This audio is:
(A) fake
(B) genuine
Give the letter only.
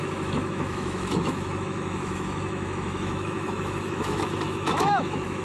A